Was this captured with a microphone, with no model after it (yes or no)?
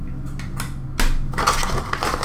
yes